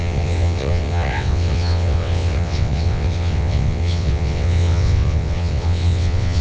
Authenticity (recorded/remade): remade